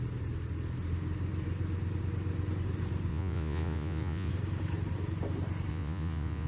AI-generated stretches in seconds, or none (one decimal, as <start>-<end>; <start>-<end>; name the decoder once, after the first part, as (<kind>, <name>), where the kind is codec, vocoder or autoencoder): 3.1-4.3 (vocoder, Vocos); 5.7-6.5